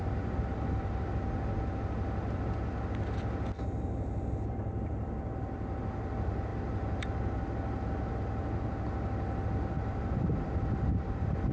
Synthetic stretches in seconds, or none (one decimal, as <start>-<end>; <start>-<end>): 0.5-1.1